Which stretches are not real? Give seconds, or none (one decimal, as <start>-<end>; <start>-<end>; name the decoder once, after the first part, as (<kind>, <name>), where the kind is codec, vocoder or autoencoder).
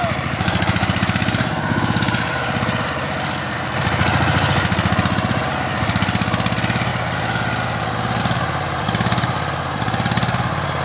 0.0-6.9 (vocoder, BigVGAN v2); 8.2-10.8